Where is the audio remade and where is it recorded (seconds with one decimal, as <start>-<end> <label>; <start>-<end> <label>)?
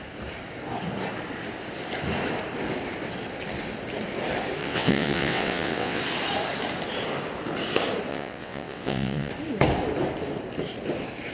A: 0.0-4.6 recorded; 4.6-6.0 remade; 6.0-8.1 recorded; 8.1-9.3 remade; 9.3-11.3 recorded